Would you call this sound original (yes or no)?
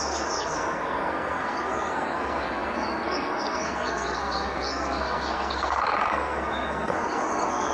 no